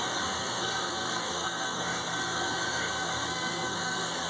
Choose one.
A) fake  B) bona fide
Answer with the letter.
A